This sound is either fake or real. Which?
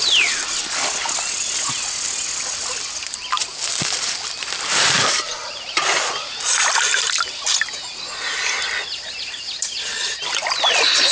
real